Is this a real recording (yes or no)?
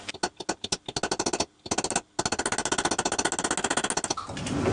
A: yes